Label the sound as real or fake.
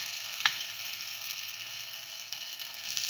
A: fake